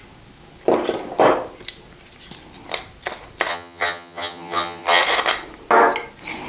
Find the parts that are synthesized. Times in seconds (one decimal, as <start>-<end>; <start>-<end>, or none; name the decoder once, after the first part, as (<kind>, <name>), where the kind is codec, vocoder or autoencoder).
3.5-5.0 (vocoder, HiFi-GAN)